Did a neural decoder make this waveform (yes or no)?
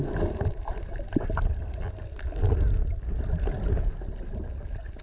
no